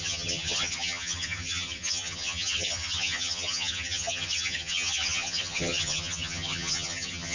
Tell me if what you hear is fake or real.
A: fake